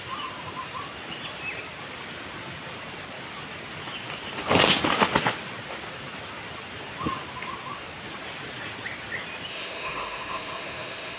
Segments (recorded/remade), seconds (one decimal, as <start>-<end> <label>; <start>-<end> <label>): 0.0-9.5 recorded; 9.5-11.2 remade